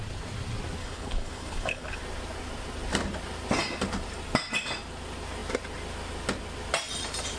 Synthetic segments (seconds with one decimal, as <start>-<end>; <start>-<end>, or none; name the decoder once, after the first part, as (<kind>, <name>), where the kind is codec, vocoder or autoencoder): 0.8-2.0 (codec, HILCodec)